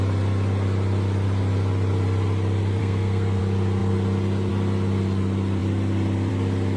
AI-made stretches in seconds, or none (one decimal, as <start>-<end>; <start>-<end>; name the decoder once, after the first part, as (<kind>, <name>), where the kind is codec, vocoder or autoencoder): 2.8-3.4 (codec, SNAC)